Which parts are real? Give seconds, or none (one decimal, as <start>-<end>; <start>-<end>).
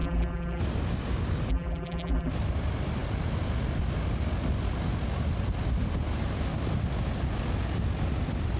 0.6-1.5; 2.3-8.6